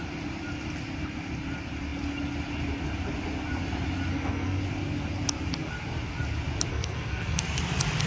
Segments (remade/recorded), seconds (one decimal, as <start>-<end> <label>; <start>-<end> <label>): 0.0-4.1 recorded; 4.1-4.6 remade; 4.6-6.7 recorded; 6.7-7.4 remade; 7.4-8.1 recorded